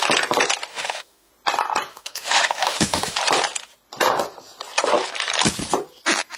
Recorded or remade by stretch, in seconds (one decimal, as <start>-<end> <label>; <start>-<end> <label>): 0.0-0.7 recorded; 0.7-1.3 remade; 1.3-1.9 recorded; 1.9-3.2 remade; 3.2-6.4 recorded